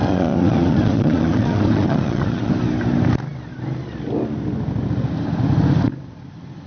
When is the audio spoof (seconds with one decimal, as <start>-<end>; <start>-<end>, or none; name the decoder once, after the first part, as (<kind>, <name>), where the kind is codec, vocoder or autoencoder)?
0.0-2.5 (vocoder, Vocos)